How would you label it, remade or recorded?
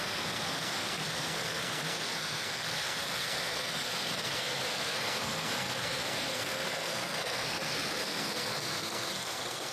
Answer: remade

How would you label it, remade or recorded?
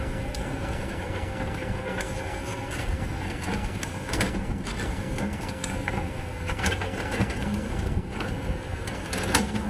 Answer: remade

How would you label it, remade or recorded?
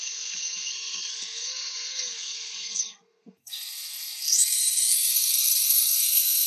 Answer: remade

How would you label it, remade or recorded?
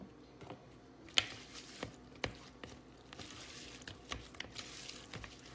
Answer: recorded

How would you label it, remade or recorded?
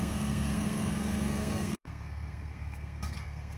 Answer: remade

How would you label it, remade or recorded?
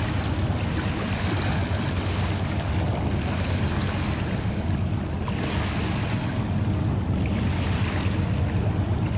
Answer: recorded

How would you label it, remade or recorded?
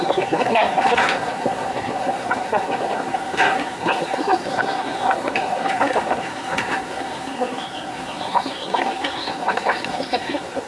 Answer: remade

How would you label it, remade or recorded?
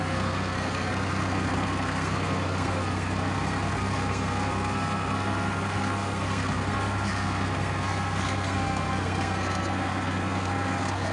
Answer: remade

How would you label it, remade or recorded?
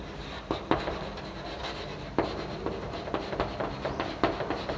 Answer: recorded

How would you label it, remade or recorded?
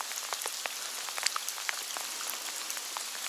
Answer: recorded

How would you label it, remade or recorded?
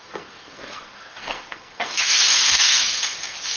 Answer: remade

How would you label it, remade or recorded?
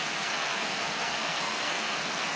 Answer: remade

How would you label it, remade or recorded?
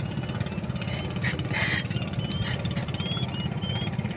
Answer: recorded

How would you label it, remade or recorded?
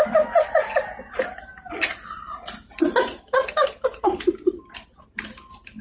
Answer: recorded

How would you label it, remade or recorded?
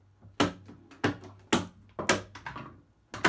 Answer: recorded